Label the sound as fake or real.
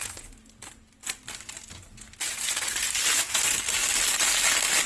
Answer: real